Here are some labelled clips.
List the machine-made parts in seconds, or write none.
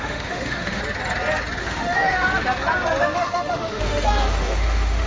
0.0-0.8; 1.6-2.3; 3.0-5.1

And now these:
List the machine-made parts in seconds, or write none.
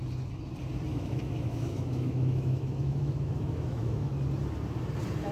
0.9-4.1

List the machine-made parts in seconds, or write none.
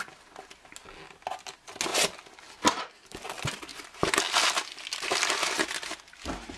none